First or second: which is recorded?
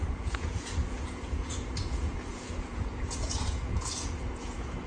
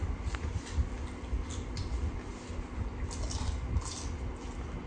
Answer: second